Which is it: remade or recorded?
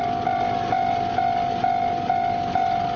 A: recorded